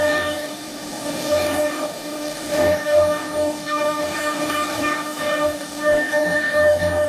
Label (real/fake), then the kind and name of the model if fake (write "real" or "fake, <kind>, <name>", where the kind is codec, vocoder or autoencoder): fake, codec, DAC